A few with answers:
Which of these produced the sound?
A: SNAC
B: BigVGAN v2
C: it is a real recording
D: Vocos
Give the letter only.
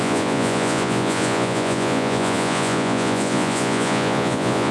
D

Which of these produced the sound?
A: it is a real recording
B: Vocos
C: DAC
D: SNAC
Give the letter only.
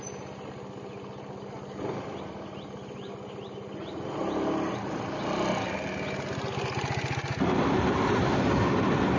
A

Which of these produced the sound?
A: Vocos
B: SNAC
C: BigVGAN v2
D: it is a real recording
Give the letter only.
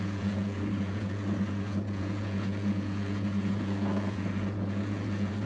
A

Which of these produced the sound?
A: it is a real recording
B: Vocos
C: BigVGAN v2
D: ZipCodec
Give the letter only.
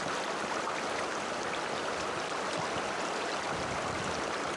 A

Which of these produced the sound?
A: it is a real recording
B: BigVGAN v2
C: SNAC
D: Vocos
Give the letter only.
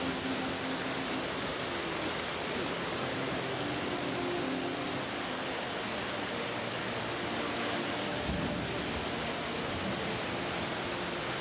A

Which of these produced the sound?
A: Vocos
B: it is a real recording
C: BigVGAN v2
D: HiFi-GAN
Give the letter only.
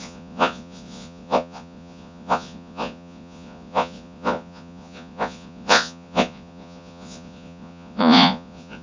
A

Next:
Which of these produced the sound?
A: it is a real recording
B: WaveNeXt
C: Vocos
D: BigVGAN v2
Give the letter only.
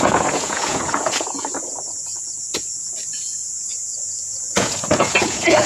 C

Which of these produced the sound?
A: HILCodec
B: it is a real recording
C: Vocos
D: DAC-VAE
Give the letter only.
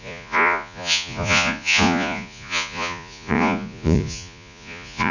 C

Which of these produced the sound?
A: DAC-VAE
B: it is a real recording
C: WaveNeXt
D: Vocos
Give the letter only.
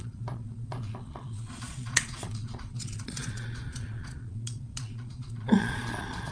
D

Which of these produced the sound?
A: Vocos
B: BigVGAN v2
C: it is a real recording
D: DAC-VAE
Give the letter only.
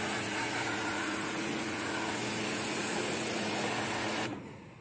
A